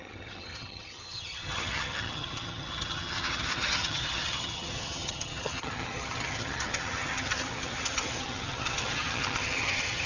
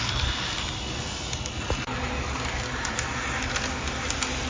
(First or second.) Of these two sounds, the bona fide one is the second